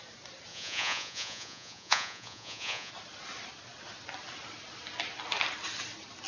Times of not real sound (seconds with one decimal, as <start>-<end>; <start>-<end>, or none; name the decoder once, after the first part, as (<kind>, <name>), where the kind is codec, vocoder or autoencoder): 0.5-2.9 (vocoder, Vocos)